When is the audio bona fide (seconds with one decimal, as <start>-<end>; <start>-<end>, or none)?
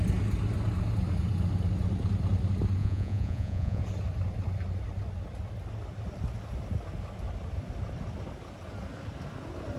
0.0-2.8; 3.8-9.8